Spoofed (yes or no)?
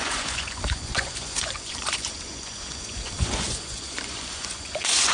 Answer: yes